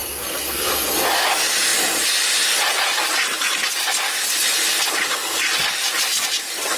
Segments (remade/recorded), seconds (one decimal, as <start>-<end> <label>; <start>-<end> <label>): 0.0-0.7 remade; 0.7-6.8 recorded